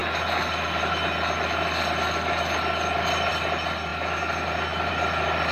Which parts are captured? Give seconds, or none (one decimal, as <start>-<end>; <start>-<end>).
0.0-5.5

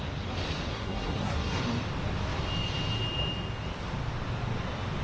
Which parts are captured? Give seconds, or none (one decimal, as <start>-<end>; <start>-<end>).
0.0-0.7; 1.6-5.0